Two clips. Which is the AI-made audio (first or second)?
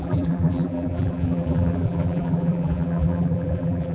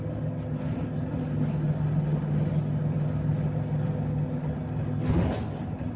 first